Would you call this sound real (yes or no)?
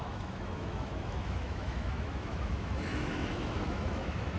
no